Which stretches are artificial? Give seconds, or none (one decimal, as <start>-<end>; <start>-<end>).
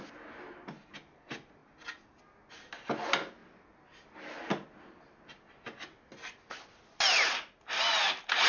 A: none